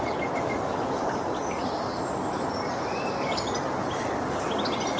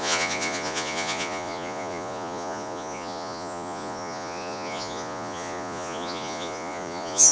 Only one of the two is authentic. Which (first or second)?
first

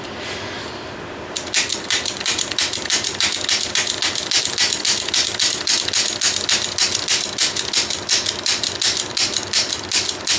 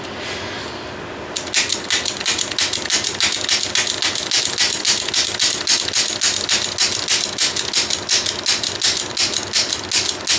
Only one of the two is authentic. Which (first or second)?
second